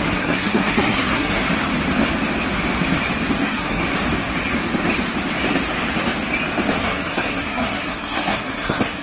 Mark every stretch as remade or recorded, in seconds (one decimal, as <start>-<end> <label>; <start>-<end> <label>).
0.0-1.4 remade; 1.4-3.4 recorded; 3.4-3.8 remade; 3.8-6.8 recorded; 6.8-9.0 remade